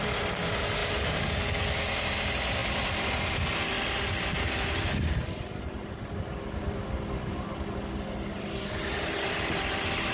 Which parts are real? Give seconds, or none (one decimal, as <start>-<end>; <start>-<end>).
0.0-0.8; 1.4-10.1